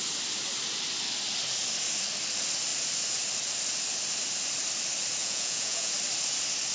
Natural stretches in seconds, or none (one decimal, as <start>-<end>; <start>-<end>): 0.0-5.2; 5.9-6.7